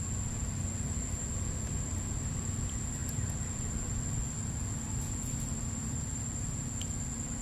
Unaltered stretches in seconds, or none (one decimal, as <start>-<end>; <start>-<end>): 0.0-7.4